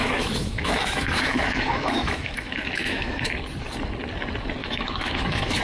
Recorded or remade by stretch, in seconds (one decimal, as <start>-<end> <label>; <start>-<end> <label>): 0.0-3.4 remade; 3.4-4.6 recorded; 4.6-5.6 remade